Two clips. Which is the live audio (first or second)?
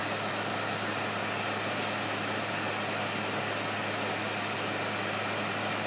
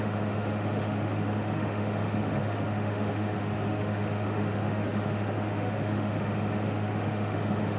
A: first